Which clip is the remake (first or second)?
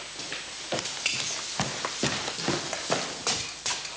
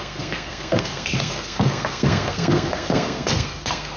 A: second